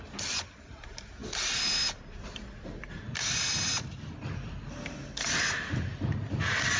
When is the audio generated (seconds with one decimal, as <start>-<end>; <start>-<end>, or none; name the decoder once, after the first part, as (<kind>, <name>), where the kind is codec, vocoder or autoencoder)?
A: 1.2-4.5 (vocoder, BigVGAN v2)